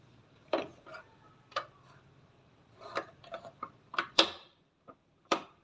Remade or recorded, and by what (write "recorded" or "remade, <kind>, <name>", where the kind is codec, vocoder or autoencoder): remade, vocoder, BigVGAN v2